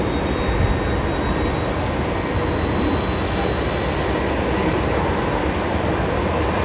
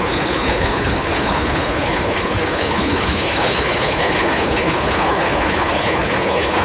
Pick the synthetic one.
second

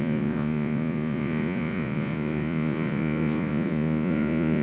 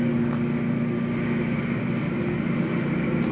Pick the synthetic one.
first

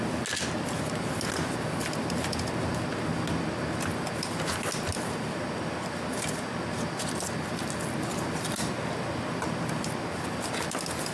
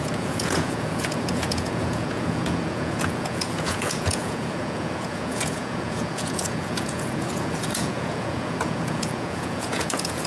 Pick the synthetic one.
second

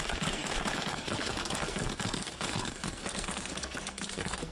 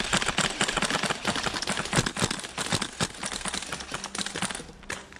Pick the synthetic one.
first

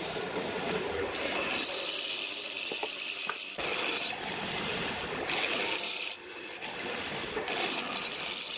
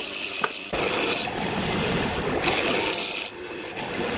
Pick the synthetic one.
first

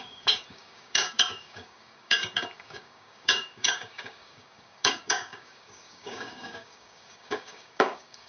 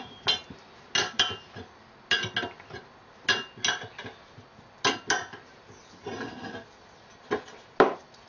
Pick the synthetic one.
first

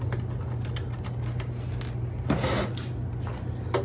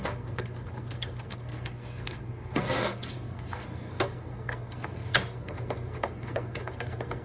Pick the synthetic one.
second